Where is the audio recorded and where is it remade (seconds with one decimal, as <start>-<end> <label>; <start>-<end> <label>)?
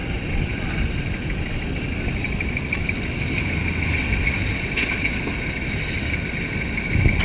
0.0-4.0 recorded; 4.0-5.2 remade; 5.2-7.2 recorded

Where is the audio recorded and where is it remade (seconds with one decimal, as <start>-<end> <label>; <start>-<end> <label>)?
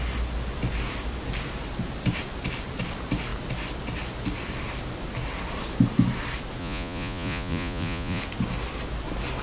0.0-6.6 recorded; 6.6-8.2 remade; 8.2-9.4 recorded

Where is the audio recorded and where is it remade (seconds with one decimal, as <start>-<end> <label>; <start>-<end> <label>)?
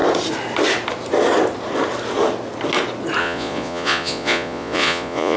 0.0-3.2 recorded; 3.2-5.4 remade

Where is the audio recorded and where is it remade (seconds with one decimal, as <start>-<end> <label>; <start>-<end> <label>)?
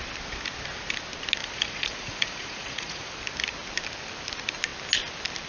0.0-1.4 recorded; 1.4-3.2 remade; 3.2-5.5 recorded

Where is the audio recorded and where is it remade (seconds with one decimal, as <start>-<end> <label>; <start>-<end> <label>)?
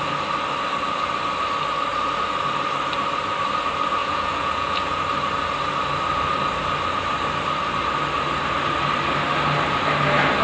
0.0-4.0 recorded; 4.0-5.0 remade; 5.0-10.4 recorded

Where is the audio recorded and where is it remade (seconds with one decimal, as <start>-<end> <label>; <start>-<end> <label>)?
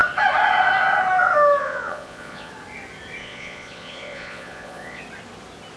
0.0-1.6 recorded; 1.6-2.5 remade; 2.5-3.2 recorded; 3.2-5.0 remade; 5.0-5.8 recorded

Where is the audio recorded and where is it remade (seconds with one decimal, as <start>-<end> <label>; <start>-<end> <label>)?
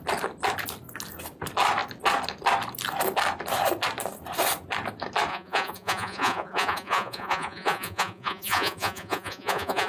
0.0-5.3 recorded; 5.3-9.9 remade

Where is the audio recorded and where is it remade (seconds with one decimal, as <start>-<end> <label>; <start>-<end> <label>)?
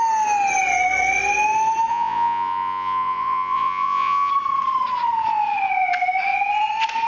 0.0-1.9 recorded; 1.9-4.3 remade; 4.3-7.1 recorded